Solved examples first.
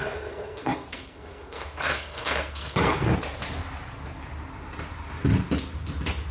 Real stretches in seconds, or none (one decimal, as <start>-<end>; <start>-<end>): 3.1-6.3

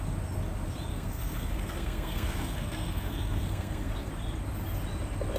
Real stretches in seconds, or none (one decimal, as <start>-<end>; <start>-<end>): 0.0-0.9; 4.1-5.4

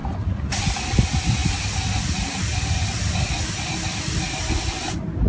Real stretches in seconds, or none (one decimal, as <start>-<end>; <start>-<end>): 0.0-5.3